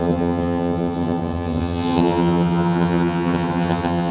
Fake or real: fake